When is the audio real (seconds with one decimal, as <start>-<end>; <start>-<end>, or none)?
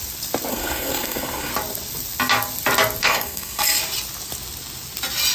0.0-0.5; 1.5-3.0; 3.8-5.3